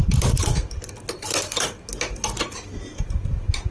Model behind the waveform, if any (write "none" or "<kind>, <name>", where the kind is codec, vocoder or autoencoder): none